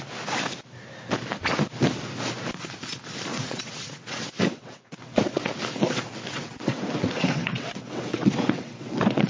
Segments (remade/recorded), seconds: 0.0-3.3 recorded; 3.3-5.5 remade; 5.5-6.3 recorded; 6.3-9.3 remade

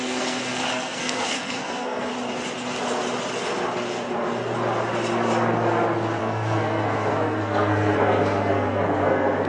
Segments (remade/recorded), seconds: 0.0-2.1 remade; 2.1-6.2 recorded; 6.2-9.5 remade

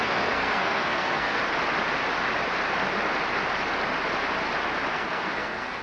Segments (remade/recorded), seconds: 0.0-1.4 remade; 1.4-4.9 recorded; 4.9-5.8 remade

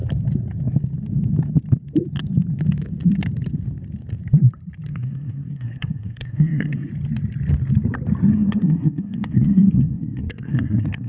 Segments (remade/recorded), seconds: 0.0-4.9 recorded; 4.9-6.9 remade; 6.9-8.3 recorded; 8.3-11.1 remade

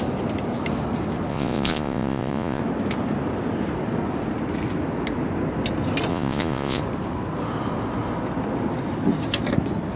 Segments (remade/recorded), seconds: 0.0-1.3 recorded; 1.3-2.6 remade; 2.6-6.1 recorded; 6.1-6.8 remade; 6.8-10.0 recorded

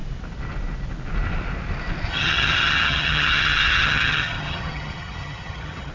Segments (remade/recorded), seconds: 0.0-2.1 recorded; 2.1-5.9 remade

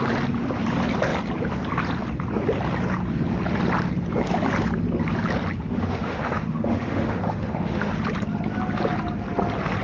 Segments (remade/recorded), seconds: 0.0-5.7 recorded; 5.7-7.9 remade; 7.9-9.8 recorded